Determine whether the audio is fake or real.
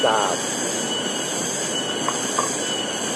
real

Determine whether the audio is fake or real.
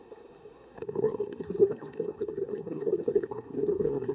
fake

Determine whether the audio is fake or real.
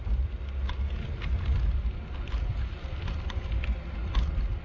real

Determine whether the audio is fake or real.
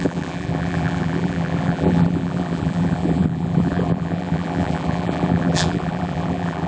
fake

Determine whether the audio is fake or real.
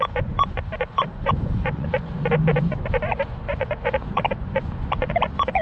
fake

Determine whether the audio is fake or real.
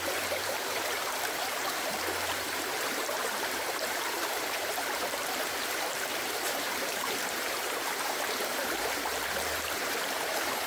fake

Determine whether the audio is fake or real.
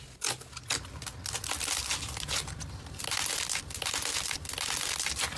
real